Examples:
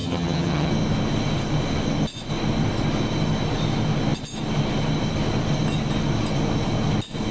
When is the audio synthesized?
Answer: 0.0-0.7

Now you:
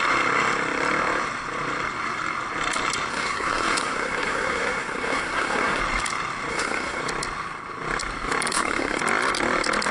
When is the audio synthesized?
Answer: 3.1-5.8; 6.5-7.0; 8.5-9.0

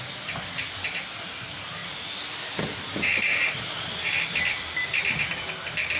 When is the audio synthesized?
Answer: none

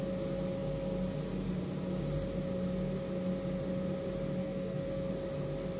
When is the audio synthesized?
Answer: 4.4-5.1

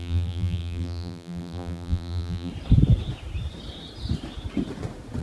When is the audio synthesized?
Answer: 0.0-2.5

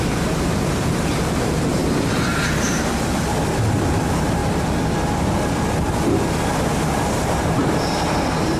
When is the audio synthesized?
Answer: 0.0-1.8; 3.8-4.4; 6.8-8.6